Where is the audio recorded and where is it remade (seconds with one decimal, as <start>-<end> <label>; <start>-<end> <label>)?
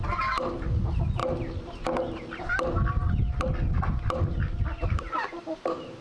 0.0-6.0 recorded